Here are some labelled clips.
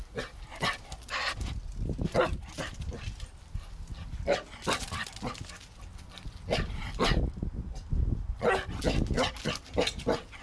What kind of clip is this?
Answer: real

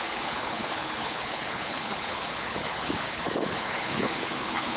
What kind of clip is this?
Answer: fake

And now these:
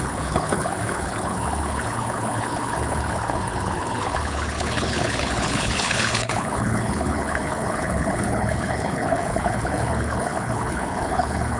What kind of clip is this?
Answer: fake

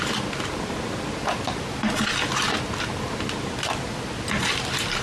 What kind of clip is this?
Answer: real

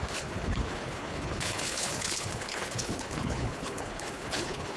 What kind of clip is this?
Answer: fake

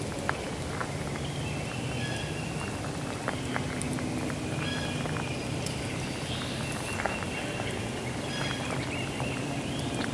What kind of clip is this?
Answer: real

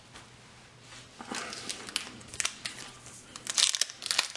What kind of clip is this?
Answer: real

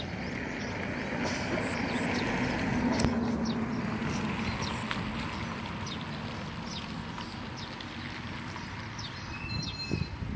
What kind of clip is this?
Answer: real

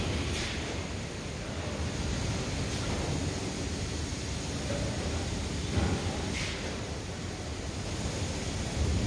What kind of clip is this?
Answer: real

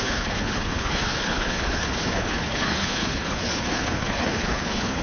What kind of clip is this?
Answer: fake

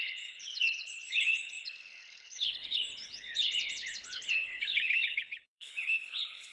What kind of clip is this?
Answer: fake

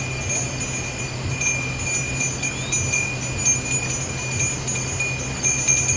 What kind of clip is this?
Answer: real